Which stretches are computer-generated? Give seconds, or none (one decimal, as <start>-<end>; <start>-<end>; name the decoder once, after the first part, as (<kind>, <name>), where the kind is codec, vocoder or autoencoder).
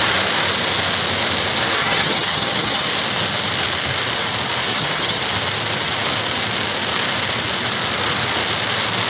1.8-2.9 (vocoder, HiFi-GAN); 4.7-5.2